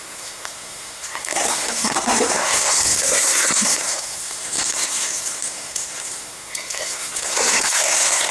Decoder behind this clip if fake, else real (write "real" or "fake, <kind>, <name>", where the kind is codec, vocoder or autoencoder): fake, codec, SNAC